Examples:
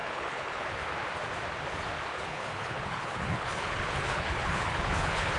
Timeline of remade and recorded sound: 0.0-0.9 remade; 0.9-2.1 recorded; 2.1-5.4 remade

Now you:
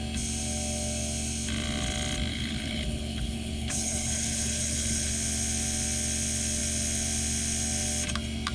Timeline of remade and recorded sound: 0.0-2.3 recorded; 2.3-5.1 remade; 5.1-8.5 recorded

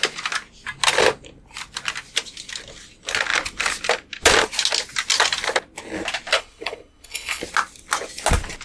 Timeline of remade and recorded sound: 0.0-6.3 recorded; 6.3-7.4 remade; 7.4-8.6 recorded